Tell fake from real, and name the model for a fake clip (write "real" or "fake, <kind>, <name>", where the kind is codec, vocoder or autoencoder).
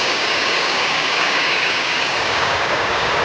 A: fake, codec, DAC